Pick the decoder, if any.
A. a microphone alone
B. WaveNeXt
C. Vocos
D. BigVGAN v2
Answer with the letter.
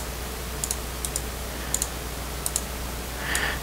A